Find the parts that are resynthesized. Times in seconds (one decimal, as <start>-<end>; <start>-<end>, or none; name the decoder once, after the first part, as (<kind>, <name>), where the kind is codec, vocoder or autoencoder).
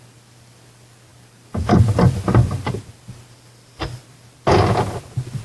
1.1-1.8 (vocoder, BigVGAN v2); 2.4-2.9